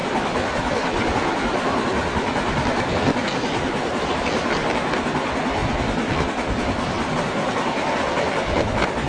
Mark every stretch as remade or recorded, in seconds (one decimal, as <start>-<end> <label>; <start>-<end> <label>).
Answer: 0.0-3.2 remade; 3.2-9.1 recorded